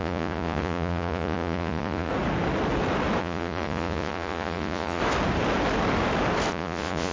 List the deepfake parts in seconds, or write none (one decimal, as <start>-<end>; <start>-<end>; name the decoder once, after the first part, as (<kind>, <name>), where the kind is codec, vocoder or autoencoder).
0.0-2.1 (vocoder, Vocos); 3.2-5.0; 6.5-7.1